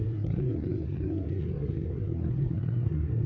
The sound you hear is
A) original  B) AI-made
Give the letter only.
B